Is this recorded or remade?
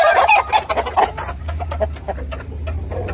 recorded